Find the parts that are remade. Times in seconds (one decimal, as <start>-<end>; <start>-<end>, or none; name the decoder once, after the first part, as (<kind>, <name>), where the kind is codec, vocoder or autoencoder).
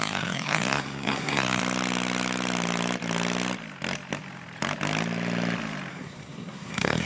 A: 0.0-1.6 (codec, SNAC); 5.9-7.1